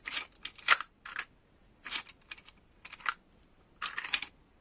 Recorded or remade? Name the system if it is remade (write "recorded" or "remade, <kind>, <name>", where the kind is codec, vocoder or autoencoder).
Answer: recorded